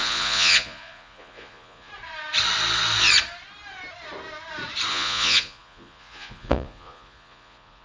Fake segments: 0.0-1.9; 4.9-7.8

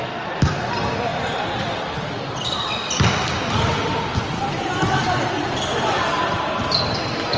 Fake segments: 1.1-5.2

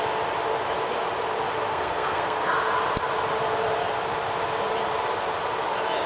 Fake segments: 1.7-2.5

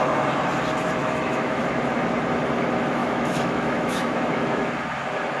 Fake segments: 1.0-1.6; 3.0-4.7